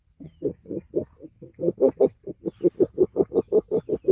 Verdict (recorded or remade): recorded